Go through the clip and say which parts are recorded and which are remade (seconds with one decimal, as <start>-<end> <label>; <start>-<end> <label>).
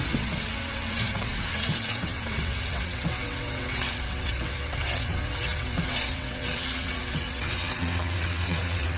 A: 0.0-9.0 remade